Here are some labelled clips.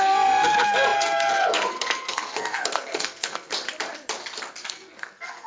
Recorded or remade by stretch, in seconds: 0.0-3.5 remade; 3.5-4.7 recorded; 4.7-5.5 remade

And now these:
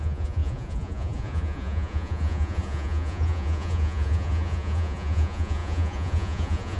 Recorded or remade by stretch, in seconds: 0.0-6.8 remade

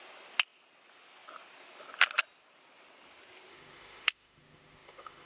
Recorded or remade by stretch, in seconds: 0.0-3.5 recorded; 3.5-5.3 remade